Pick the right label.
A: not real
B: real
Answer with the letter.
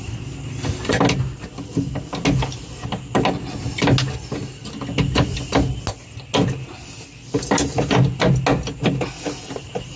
B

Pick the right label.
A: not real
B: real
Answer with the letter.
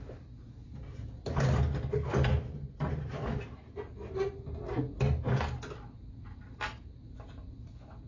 B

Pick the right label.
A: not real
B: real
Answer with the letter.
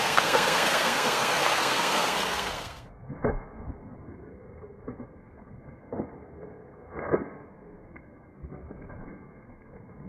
A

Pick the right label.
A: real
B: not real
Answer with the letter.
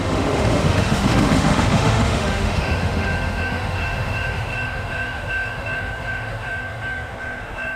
B